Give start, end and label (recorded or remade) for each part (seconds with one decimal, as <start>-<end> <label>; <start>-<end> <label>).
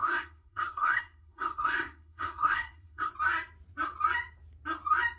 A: 0.0-3.1 remade; 3.1-5.2 recorded